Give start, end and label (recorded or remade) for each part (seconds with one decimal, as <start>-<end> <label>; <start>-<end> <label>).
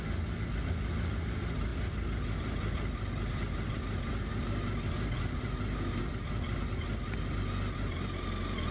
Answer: 0.0-8.7 recorded